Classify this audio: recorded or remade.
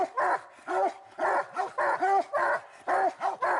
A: recorded